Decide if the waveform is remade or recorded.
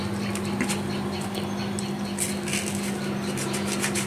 recorded